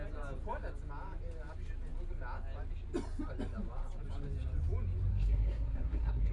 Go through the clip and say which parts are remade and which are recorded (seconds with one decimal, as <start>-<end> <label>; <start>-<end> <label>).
0.0-5.1 recorded; 5.1-6.3 remade

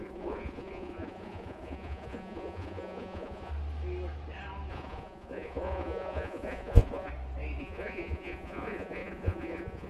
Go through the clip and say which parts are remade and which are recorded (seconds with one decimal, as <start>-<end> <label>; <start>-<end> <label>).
0.0-3.5 remade; 3.5-4.7 recorded; 4.7-7.1 remade; 7.1-7.6 recorded; 7.6-9.9 remade

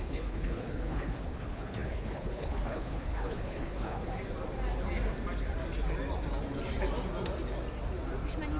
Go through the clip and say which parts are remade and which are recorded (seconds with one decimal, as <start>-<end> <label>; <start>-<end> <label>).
0.0-4.1 remade; 4.1-8.6 recorded